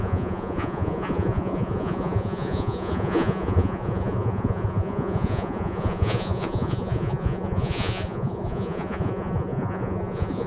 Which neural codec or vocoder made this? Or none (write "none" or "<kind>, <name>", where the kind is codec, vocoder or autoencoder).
vocoder, Vocos